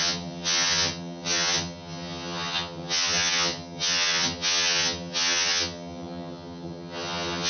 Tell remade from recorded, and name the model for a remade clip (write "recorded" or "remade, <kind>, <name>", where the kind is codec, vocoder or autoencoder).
remade, vocoder, HiFi-GAN